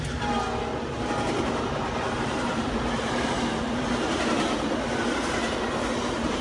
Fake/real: real